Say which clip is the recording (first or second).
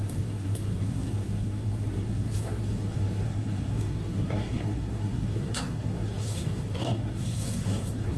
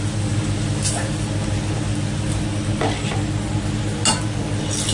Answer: second